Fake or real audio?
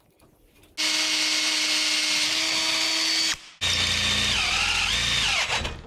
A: real